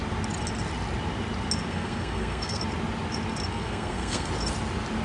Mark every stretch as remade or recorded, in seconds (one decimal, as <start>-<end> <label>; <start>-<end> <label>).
0.0-1.7 recorded; 1.7-2.6 remade; 2.6-3.5 recorded; 3.5-4.3 remade; 4.3-5.0 recorded